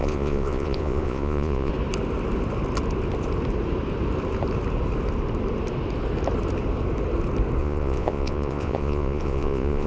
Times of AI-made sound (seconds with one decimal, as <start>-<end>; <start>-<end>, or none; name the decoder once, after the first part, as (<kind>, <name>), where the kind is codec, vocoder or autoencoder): 0.0-1.7 (vocoder, Vocos); 7.6-9.9

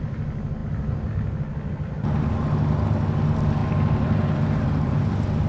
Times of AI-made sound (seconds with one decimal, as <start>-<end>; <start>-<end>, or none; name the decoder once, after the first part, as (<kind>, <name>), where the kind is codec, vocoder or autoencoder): 3.6-5.1 (vocoder, BigVGAN v2)

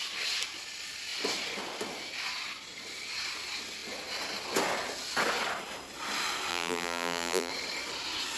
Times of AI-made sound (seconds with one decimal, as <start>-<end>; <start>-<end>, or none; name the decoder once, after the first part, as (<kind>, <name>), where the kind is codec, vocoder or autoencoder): 6.5-7.5 (vocoder, BigVGAN v2)

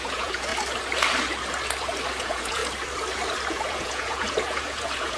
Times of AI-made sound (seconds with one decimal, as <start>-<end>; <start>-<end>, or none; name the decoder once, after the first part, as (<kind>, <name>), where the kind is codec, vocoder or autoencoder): 0.0-0.5 (vocoder, Vocos); 2.2-2.6; 3.5-5.2

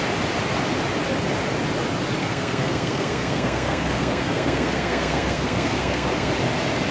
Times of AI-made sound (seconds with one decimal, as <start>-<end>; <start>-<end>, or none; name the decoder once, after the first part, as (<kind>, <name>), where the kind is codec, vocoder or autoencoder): 2.2-6.3 (codec, SNAC)